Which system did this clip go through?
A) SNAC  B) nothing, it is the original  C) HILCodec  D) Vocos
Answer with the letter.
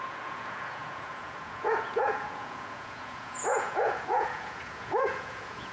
D